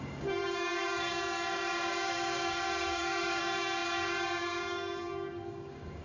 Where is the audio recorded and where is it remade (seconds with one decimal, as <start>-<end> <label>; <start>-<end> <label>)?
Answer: 0.0-6.0 remade